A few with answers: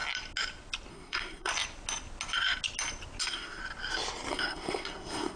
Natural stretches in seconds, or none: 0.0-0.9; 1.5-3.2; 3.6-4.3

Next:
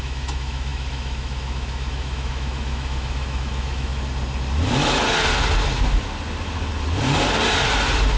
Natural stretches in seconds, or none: 3.9-8.2